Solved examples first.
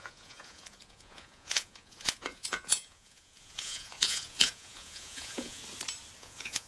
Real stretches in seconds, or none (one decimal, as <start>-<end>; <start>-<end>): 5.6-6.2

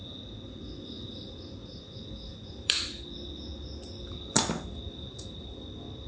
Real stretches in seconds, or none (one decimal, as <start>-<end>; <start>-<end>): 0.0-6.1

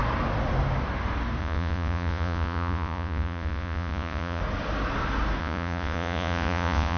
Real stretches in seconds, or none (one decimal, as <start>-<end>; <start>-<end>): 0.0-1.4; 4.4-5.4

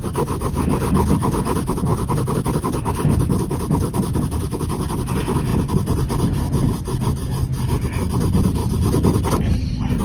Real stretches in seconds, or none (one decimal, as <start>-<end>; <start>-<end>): 0.0-10.0

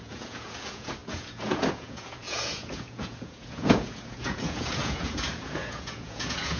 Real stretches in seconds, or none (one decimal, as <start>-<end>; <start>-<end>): none

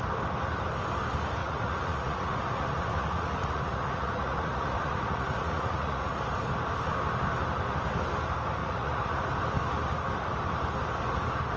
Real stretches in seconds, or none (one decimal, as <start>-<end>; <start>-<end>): 0.0-1.4; 6.2-8.6; 9.2-11.6